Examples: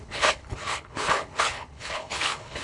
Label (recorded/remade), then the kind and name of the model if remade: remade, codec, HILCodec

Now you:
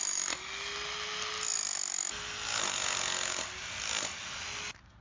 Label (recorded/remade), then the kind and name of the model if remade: recorded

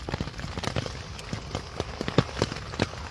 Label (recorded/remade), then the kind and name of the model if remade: recorded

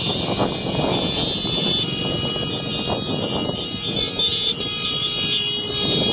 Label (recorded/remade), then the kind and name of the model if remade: recorded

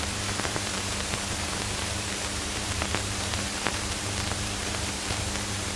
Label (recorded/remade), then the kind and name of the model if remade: remade, vocoder, BigVGAN v2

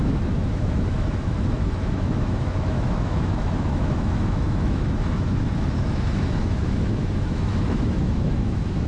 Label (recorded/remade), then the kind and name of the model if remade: remade, autoencoder, DAC-VAE